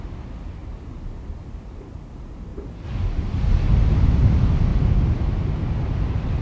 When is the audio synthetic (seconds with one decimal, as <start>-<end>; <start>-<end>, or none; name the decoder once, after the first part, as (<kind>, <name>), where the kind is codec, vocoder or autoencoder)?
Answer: none